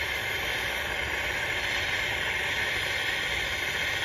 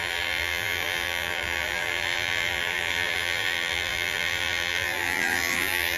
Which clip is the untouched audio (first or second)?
first